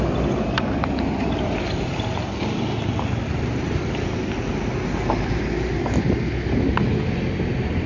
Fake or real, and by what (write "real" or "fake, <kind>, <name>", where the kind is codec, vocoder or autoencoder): real